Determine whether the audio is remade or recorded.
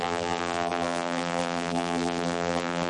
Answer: remade